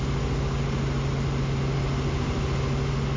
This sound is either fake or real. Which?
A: real